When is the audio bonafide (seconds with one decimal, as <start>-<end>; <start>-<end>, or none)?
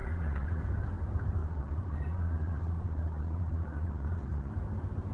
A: 0.6-1.4; 4.5-5.1